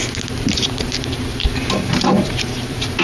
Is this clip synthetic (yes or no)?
yes